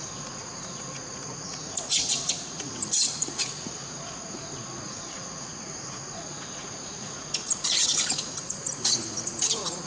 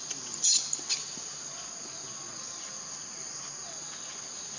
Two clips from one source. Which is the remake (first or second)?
first